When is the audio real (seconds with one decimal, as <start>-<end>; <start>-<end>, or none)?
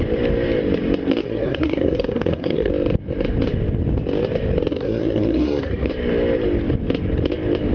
0.0-1.2; 2.7-4.7; 5.9-7.7